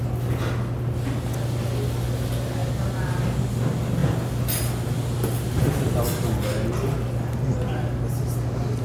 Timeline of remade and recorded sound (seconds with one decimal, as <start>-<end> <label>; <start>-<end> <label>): 0.0-8.8 recorded